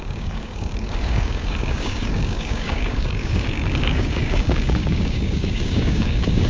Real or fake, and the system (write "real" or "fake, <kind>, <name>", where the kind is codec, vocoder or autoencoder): fake, codec, DAC